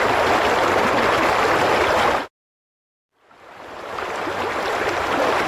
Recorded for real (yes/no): yes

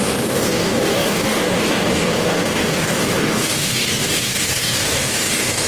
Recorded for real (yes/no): no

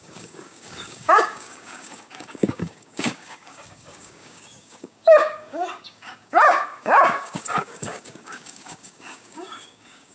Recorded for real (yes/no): no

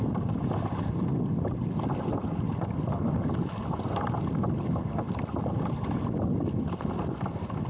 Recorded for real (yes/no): yes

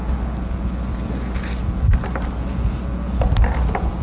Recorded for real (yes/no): yes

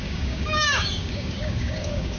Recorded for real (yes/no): no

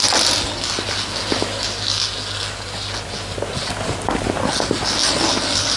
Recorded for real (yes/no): yes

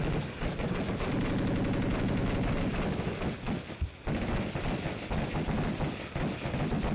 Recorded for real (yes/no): yes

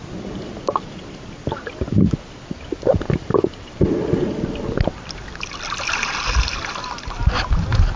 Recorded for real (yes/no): yes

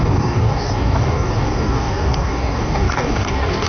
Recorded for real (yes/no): no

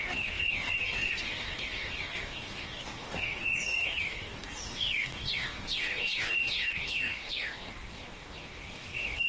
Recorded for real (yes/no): no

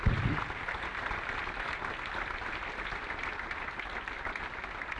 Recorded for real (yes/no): yes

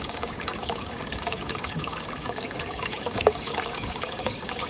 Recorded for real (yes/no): no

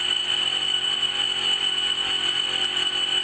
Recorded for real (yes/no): yes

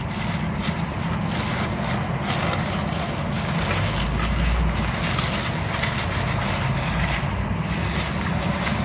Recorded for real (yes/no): yes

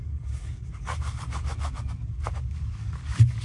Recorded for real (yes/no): no